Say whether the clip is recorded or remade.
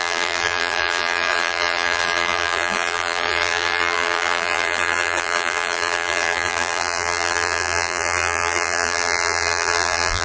remade